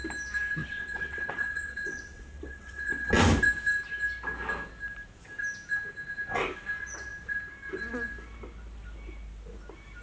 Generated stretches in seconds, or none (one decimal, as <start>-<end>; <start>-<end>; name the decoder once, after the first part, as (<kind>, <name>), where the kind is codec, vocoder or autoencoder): 0.6-3.2 (vocoder, WaveNeXt)